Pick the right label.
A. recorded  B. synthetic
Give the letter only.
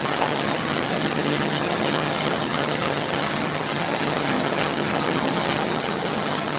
B